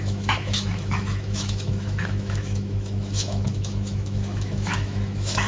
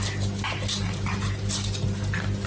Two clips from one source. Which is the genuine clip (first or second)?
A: second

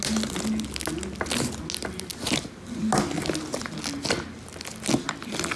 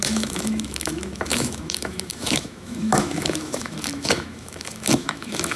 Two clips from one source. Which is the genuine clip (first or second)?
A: first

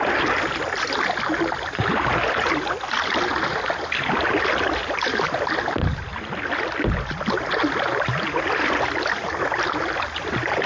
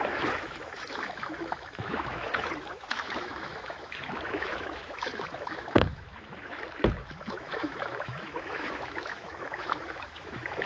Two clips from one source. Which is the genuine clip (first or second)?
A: first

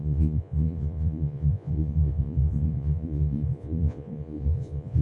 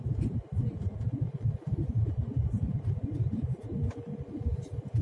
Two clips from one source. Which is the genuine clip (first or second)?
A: second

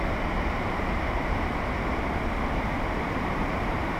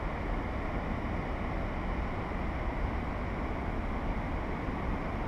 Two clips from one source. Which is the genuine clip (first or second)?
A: second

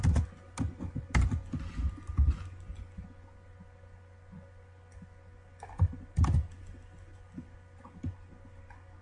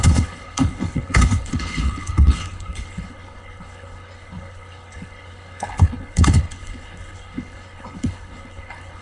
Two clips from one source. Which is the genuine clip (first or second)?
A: first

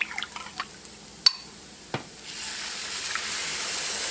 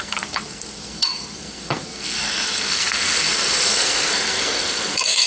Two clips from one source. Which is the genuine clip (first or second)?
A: first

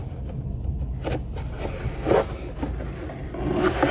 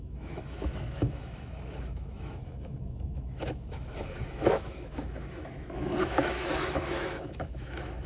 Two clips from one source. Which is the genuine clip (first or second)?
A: first